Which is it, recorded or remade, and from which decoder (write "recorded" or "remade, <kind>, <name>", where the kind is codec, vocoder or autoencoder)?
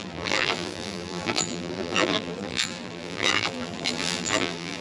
remade, vocoder, BigVGAN v2